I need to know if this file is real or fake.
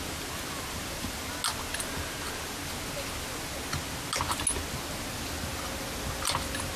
real